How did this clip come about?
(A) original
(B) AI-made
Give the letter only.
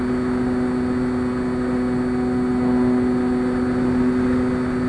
A